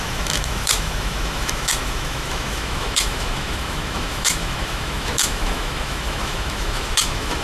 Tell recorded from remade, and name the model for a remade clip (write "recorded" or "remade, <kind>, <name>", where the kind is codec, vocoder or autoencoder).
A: remade, autoencoder, DAC-VAE